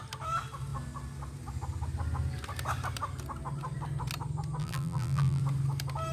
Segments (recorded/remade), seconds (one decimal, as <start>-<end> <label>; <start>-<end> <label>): 0.0-4.6 recorded; 4.6-5.4 remade; 5.4-6.1 recorded